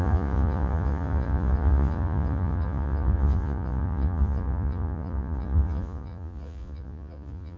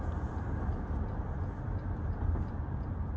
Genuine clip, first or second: second